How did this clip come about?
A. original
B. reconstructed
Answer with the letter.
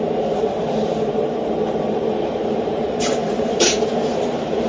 B